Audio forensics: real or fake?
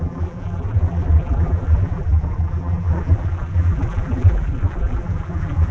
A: fake